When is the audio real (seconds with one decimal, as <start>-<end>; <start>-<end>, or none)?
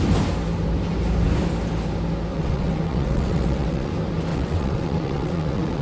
0.0-2.3; 3.9-4.3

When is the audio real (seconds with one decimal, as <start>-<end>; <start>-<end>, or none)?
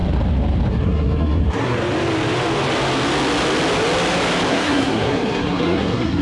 0.0-0.7; 1.8-4.5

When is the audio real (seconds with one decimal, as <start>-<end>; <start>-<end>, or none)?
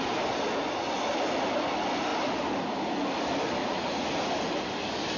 0.0-3.6; 4.1-5.2